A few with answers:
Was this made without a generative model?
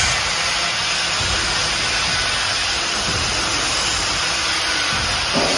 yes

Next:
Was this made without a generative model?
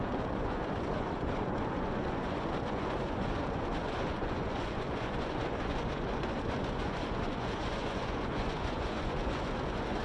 no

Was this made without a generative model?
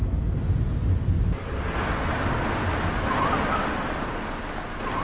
yes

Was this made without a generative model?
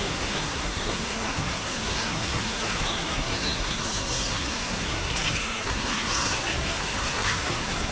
no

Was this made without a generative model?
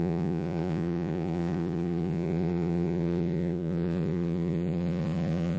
no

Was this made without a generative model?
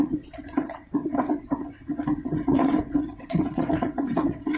no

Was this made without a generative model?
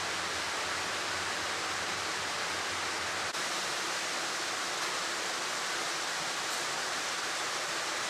yes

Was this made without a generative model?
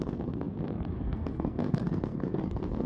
no